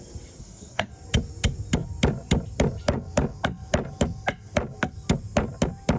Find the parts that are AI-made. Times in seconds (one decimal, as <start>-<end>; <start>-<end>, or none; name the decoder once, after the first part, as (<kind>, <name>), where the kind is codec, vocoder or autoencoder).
0.4-0.9 (codec, SNAC)